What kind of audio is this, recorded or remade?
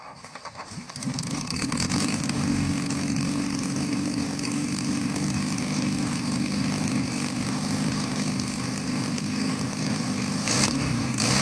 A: remade